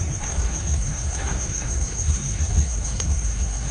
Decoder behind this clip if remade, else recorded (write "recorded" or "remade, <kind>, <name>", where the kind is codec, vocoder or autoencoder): remade, codec, SNAC